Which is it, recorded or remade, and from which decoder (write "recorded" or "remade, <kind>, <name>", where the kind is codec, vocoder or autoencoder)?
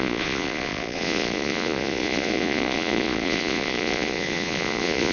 remade, vocoder, Vocos